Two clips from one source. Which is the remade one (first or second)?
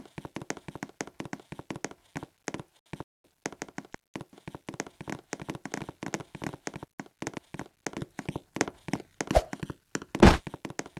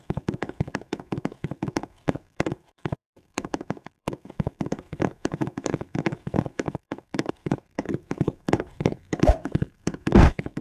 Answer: second